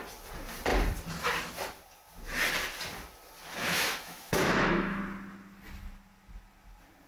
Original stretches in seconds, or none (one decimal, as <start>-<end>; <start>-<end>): 0.0-3.6; 5.0-7.1

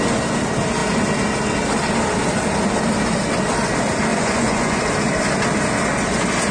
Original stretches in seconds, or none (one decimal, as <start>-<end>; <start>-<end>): 0.0-4.1; 4.8-6.5